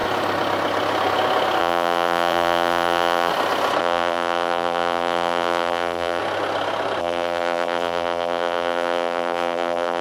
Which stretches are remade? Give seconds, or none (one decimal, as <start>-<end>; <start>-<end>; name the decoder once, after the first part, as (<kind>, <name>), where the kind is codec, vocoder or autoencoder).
1.6-3.3 (vocoder, BigVGAN v2); 3.8-6.2; 7.0-10.0